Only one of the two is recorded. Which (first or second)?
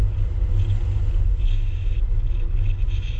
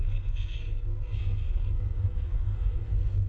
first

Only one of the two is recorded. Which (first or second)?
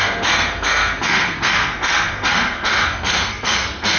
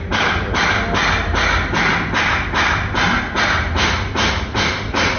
second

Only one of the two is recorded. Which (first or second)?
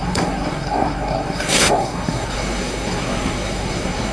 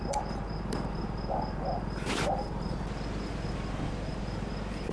second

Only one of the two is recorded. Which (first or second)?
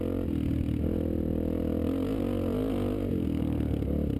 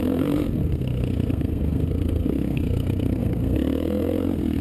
first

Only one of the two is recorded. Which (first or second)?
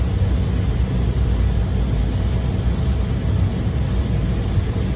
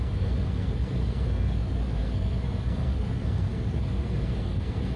first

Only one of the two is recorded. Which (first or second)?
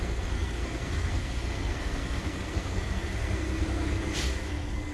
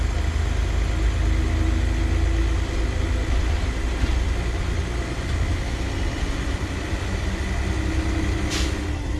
second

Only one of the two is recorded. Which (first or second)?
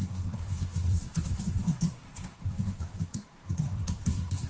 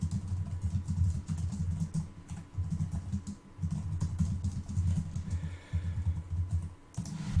second